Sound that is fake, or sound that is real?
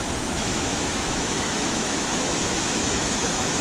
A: fake